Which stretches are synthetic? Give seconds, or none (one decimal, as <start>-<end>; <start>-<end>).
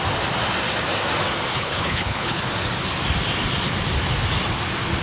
1.5-2.4